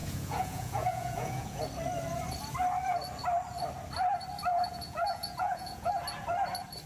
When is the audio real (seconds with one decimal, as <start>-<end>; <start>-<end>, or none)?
1.6-4.5; 5.9-6.9